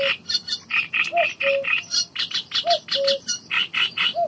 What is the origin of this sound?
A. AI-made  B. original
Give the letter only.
B